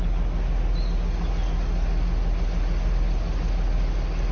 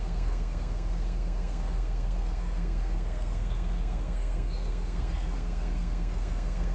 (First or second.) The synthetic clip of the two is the second